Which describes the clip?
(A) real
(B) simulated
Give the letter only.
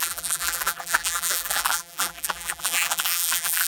B